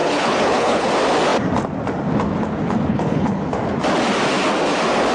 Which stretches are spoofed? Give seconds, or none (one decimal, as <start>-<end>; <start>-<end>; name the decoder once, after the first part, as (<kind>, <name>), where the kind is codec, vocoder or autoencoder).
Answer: 0.0-0.9 (codec, HILCodec); 2.9-3.4